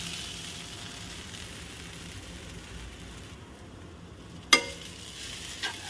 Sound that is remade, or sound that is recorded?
recorded